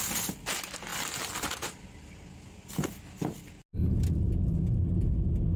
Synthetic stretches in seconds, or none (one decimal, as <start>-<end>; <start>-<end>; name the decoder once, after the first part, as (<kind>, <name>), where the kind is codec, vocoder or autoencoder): none